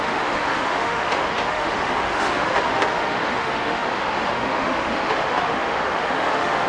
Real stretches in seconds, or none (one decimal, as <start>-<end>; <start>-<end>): none

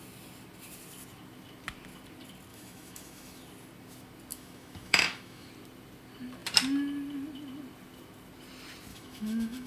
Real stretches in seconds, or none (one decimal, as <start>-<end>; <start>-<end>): 0.0-2.5; 3.4-4.3; 5.5-8.9

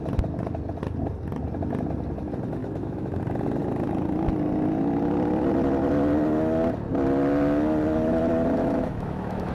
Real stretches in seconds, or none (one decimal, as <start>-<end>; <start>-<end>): 0.0-2.6; 3.2-8.6

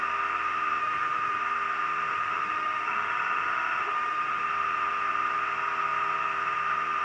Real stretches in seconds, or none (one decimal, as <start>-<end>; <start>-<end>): 0.0-0.8; 1.4-2.1; 4.4-7.0